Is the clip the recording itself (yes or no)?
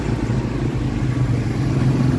yes